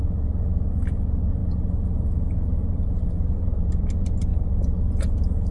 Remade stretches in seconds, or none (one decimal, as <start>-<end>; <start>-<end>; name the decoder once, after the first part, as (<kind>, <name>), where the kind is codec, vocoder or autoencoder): none